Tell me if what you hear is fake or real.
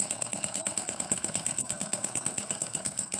fake